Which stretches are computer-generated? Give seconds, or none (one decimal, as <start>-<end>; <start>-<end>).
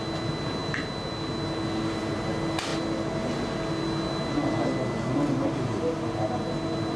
none